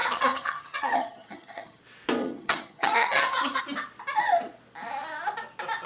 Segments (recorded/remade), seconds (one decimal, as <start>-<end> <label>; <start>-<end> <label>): 0.0-1.8 remade; 1.8-2.2 recorded; 2.2-3.6 remade; 3.6-5.9 recorded